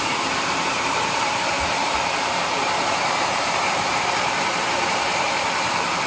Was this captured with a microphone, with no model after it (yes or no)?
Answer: no